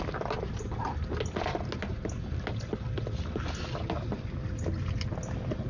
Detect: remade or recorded recorded